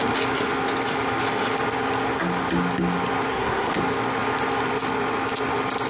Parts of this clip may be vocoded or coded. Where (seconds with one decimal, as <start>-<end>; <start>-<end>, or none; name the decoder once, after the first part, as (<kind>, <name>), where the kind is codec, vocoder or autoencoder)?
3.3-3.8 (codec, SNAC)